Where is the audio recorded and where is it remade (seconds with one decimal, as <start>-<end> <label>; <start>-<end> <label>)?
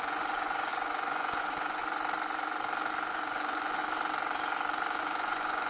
0.0-1.8 remade; 1.8-3.1 recorded; 3.1-3.8 remade; 3.8-5.0 recorded; 5.0-5.7 remade